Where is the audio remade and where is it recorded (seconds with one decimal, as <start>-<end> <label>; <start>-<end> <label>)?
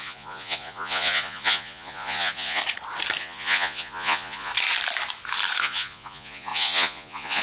0.0-2.6 remade; 2.6-3.2 recorded; 3.2-4.5 remade; 4.5-5.6 recorded; 5.6-7.4 remade